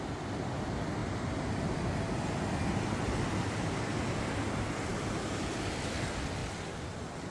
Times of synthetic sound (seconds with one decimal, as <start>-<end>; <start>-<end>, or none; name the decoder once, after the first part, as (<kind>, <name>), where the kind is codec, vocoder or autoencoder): none